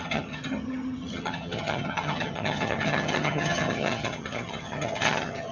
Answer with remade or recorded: remade